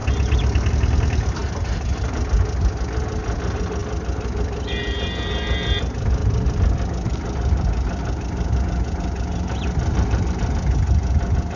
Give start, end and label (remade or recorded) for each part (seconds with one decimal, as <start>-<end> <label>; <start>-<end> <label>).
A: 0.0-11.6 recorded